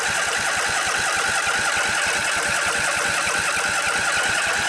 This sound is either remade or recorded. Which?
recorded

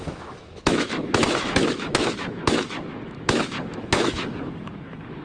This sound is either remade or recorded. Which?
remade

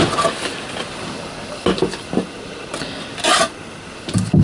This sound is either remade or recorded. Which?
recorded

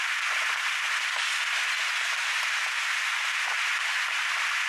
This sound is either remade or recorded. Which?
recorded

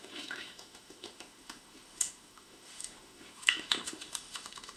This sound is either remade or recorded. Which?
remade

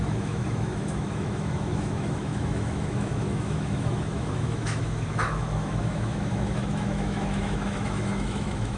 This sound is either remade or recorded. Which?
remade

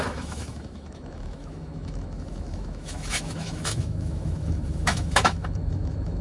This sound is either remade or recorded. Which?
remade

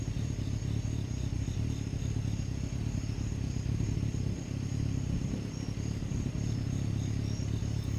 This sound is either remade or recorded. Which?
recorded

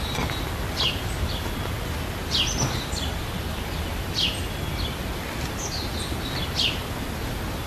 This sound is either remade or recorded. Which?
recorded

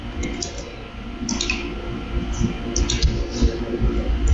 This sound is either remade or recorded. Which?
recorded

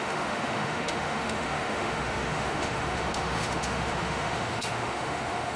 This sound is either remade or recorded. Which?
remade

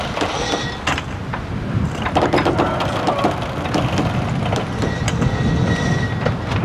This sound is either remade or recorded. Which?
recorded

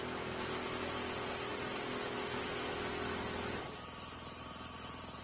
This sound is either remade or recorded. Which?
recorded